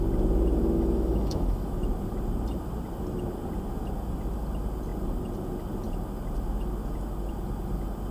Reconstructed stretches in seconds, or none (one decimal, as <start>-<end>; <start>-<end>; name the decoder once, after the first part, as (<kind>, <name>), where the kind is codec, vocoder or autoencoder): 0.6-1.7 (autoencoder, DAC-VAE)